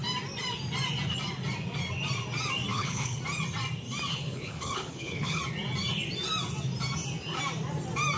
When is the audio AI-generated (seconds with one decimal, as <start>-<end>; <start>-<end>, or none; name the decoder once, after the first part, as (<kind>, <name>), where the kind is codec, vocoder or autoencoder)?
2.7-3.2 (codec, HILCodec); 4.1-5.4